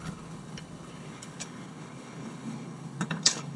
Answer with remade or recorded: remade